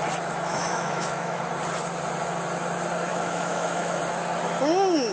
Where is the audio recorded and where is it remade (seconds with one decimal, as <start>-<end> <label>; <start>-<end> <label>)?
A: 0.0-0.5 recorded; 0.5-1.4 remade; 1.4-3.1 recorded; 3.1-4.0 remade; 4.0-5.1 recorded